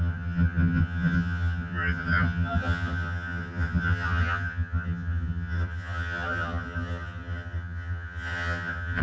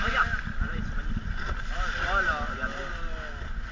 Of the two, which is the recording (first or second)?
second